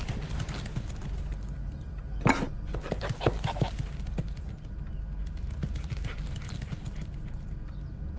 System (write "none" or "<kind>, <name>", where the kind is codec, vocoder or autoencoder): none